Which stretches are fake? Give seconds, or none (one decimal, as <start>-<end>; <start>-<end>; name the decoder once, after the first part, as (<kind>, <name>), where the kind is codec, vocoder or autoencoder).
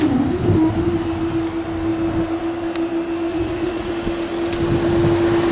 3.3-3.9 (vocoder, Vocos)